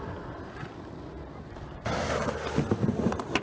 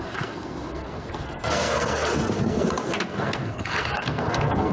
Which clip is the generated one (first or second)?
second